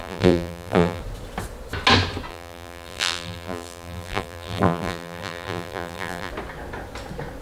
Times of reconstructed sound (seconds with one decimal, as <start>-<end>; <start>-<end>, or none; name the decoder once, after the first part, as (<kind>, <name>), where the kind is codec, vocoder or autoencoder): 0.0-1.0 (vocoder, BigVGAN v2); 2.3-6.3